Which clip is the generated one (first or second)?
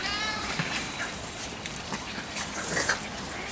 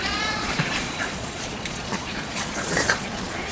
second